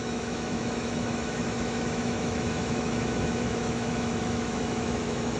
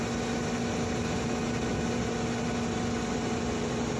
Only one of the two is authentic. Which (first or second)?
second